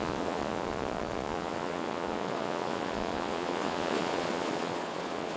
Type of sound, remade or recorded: remade